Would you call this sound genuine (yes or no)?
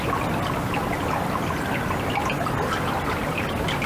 yes